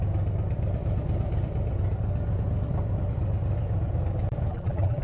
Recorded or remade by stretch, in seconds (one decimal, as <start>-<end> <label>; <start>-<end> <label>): 0.0-4.5 recorded; 4.5-5.0 remade